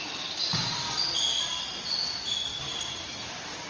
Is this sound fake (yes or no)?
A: no